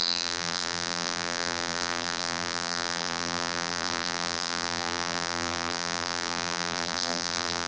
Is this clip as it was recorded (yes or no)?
no